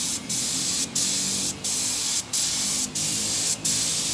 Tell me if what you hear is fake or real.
real